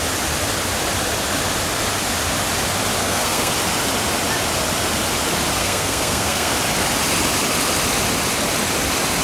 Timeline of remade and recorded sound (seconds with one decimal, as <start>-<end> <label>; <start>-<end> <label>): 0.0-3.0 recorded; 3.0-3.5 remade; 3.5-5.6 recorded; 5.6-6.5 remade; 6.5-9.2 recorded